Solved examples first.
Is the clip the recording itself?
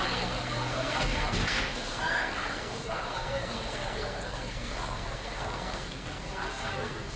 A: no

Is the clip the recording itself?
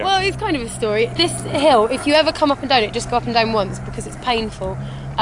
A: yes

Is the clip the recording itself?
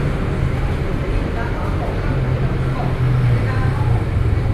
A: yes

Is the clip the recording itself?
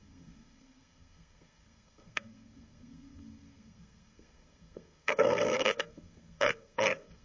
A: no